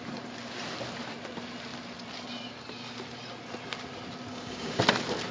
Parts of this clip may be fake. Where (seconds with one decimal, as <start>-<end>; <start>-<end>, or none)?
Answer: 4.3-4.8